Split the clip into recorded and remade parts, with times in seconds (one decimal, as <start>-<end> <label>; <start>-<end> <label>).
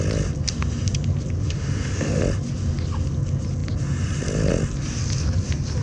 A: 0.0-1.4 recorded; 1.4-2.2 remade; 2.2-5.8 recorded